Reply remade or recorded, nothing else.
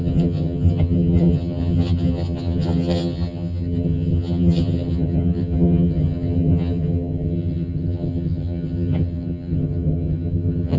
remade